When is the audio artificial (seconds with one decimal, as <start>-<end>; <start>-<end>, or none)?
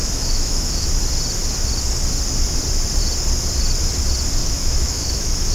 0.0-1.0; 4.4-5.5